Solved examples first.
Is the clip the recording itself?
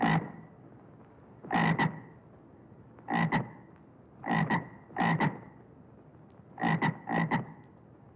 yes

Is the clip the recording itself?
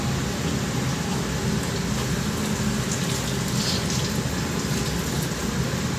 yes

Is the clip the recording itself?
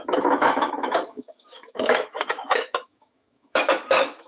no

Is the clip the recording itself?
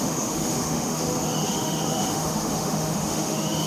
no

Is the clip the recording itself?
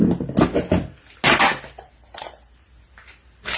yes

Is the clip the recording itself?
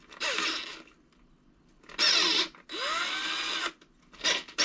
yes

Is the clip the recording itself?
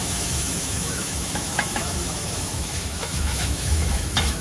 no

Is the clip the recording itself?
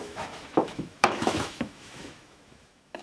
no